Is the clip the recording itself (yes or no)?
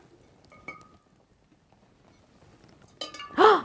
yes